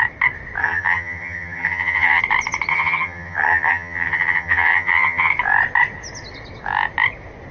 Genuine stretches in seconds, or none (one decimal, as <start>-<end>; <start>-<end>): 0.0-0.6; 2.2-2.7; 5.3-7.5